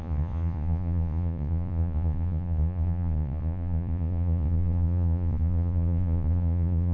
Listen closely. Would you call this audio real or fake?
fake